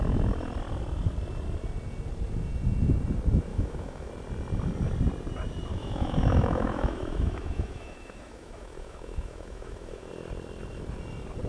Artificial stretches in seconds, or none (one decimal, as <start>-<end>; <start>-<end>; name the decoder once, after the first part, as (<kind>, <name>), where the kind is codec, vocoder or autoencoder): 3.5-4.1 (autoencoder, DAC-VAE); 5.7-10.1